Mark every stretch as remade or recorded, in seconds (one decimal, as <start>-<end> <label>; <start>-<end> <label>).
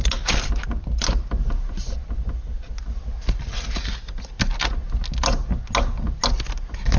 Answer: 0.0-7.0 recorded